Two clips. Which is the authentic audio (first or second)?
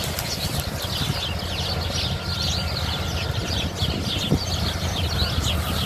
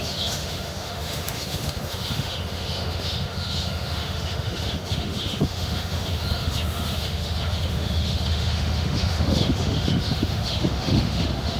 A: first